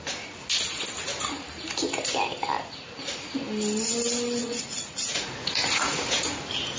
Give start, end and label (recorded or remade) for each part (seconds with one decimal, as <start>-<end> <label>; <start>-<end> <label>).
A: 0.0-4.4 recorded; 4.4-5.7 remade; 5.7-6.8 recorded